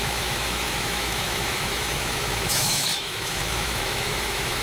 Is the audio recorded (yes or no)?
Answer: no